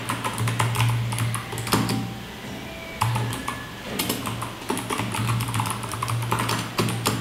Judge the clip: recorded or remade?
recorded